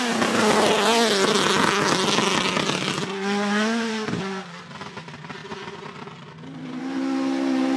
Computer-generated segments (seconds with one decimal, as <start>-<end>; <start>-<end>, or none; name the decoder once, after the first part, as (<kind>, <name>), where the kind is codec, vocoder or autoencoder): none

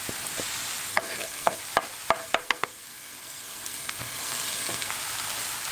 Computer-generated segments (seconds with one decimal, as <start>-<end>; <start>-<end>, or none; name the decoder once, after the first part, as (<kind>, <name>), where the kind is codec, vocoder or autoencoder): 0.9-1.6 (codec, SNAC); 2.2-4.9

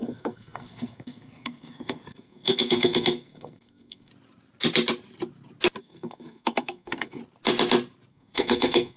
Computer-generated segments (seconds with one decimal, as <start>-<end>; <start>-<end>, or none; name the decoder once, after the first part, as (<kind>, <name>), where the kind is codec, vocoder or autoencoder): 0.0-4.1 (codec, SNAC); 5.8-7.2; 8.1-9.0

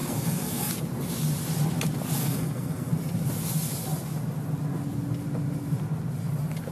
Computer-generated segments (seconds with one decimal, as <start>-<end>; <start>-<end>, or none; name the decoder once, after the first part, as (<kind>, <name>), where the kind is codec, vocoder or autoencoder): 0.0-0.7 (codec, SNAC); 2.2-2.9

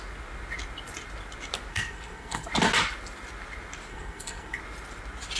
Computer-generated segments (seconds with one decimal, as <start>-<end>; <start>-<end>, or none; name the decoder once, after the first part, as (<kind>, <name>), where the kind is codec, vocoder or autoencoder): 1.7-2.5 (codec, SNAC); 3.9-4.6

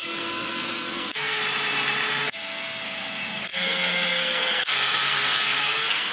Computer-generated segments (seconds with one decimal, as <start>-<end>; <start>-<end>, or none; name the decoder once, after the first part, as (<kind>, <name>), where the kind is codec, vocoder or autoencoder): 0.0-1.4 (codec, SNAC); 2.1-6.1